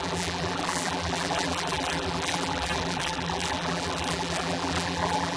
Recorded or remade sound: remade